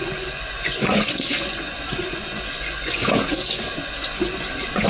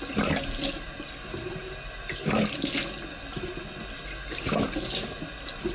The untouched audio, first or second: second